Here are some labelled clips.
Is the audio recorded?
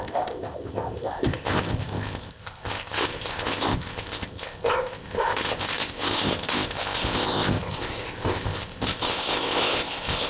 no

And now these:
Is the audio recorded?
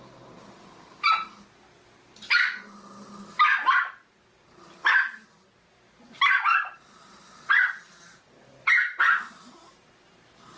yes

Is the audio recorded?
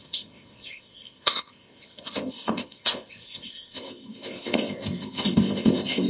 no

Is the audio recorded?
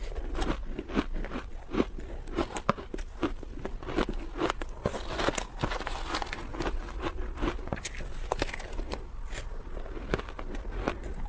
yes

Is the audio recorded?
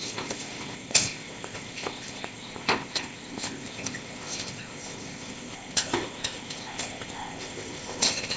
no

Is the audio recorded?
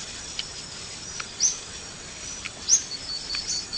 yes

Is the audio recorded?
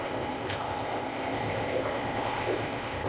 no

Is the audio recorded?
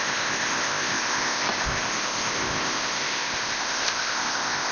no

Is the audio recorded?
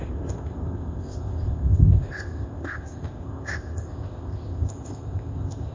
no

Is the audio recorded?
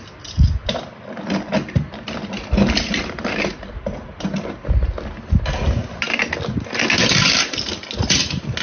yes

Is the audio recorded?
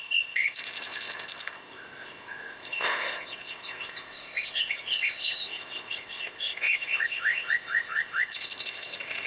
no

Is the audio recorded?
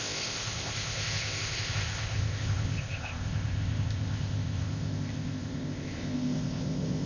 no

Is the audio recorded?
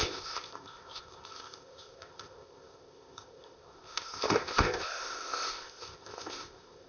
no